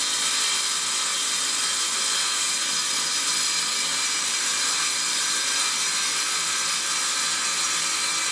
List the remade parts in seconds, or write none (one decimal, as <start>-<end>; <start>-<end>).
3.9-4.7